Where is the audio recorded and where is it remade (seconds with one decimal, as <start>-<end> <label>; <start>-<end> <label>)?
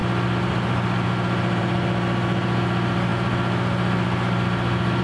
0.0-5.0 recorded